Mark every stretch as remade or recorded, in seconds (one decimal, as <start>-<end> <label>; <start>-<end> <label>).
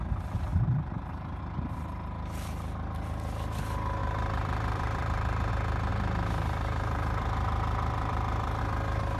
0.0-0.5 recorded; 0.5-1.4 remade; 1.4-4.0 recorded; 4.0-5.5 remade; 5.5-5.9 recorded; 5.9-8.6 remade; 8.6-9.2 recorded